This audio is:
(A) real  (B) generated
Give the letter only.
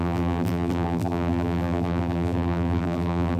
B